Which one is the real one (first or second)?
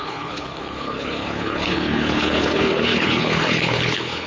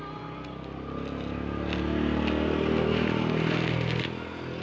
second